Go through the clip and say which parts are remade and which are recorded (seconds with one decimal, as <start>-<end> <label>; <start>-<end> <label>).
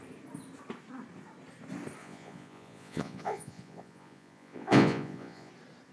0.0-2.0 recorded; 2.0-5.5 remade; 5.5-5.9 recorded